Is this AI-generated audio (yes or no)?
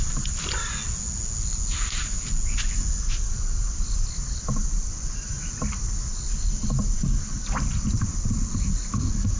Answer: no